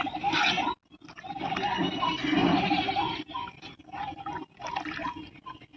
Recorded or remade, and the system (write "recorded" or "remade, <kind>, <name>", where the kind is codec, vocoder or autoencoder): recorded